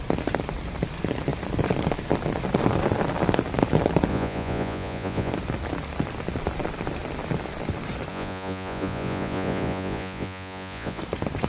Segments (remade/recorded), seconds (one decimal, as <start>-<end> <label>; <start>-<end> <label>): 0.0-4.1 recorded; 4.1-5.3 remade; 5.3-8.1 recorded; 8.1-11.0 remade; 11.0-11.5 recorded